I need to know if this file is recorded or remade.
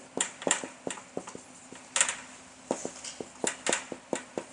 recorded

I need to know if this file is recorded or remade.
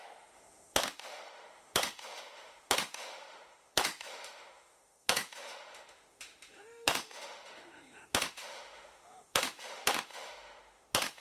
remade